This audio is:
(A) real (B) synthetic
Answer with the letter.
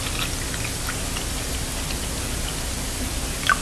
A